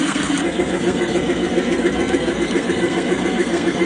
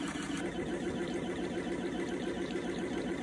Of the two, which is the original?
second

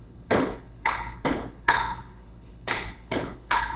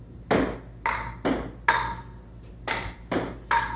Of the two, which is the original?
second